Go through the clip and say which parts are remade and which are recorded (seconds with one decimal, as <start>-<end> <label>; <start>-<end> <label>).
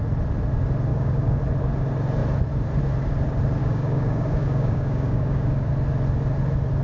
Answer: 0.0-0.9 recorded; 0.9-1.4 remade; 1.4-3.6 recorded; 3.6-5.7 remade; 5.7-6.8 recorded